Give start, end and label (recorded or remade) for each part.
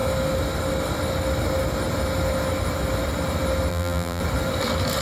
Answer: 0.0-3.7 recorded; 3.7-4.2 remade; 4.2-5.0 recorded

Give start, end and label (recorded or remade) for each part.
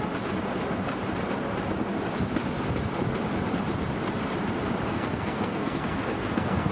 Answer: 0.0-4.9 recorded; 4.9-6.7 remade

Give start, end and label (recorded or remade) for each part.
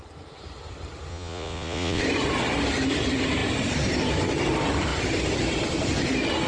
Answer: 0.0-1.1 recorded; 1.1-2.0 remade; 2.0-6.5 recorded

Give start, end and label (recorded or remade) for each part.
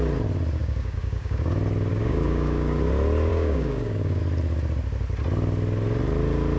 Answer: 0.0-0.6 recorded; 0.6-1.5 remade; 1.5-1.9 recorded; 1.9-2.8 remade; 2.8-3.3 recorded; 3.3-4.2 remade; 4.2-6.6 recorded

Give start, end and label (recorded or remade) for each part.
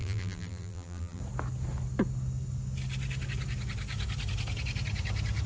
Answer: 0.0-1.2 remade; 1.2-5.5 recorded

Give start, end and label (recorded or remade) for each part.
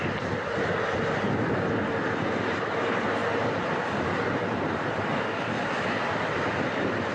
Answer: 0.0-7.1 recorded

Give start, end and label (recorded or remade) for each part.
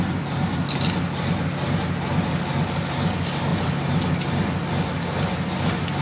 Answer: 0.0-6.0 recorded